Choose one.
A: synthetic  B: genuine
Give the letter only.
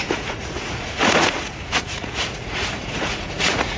A